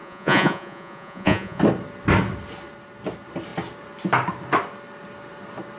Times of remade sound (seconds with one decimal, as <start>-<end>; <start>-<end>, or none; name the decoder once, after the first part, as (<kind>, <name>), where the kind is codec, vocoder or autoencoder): 0.0-1.6 (vocoder, Vocos)